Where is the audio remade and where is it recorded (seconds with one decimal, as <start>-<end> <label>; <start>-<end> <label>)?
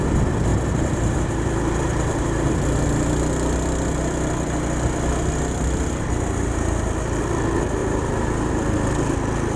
0.0-0.5 recorded; 0.5-2.5 remade; 2.5-7.8 recorded; 7.8-8.5 remade; 8.5-9.6 recorded